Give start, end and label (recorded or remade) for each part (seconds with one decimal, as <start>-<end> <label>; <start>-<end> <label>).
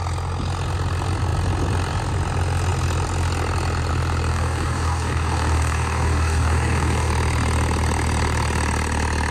0.0-4.3 recorded; 4.3-7.1 remade; 7.1-9.3 recorded